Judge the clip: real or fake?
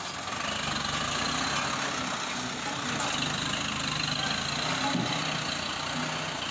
real